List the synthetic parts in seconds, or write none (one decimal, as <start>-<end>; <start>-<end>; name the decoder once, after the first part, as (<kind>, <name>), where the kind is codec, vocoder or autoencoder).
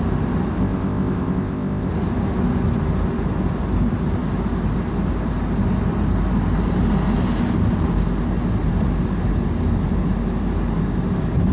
0.6-1.9 (codec, ZipCodec)